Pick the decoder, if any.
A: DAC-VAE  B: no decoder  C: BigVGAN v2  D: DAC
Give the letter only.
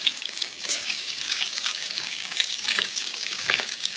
D